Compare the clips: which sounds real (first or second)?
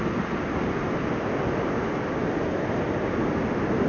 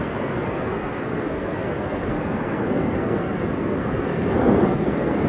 first